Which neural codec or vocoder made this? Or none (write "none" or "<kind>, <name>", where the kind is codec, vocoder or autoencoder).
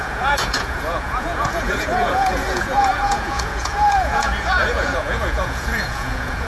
vocoder, Vocos